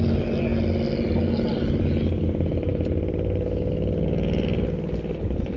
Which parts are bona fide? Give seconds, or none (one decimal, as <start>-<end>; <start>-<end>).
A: 0.0-5.6